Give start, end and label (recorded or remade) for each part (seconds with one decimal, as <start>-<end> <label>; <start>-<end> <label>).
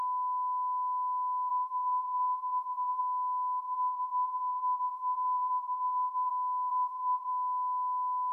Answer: 0.0-1.5 recorded; 1.5-3.0 remade; 3.0-3.6 recorded; 3.6-6.3 remade; 6.3-6.7 recorded; 6.7-7.3 remade; 7.3-8.3 recorded